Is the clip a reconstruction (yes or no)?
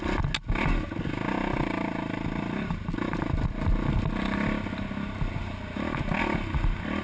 no